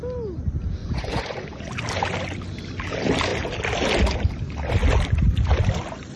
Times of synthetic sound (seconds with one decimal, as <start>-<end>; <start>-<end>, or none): 0.8-1.7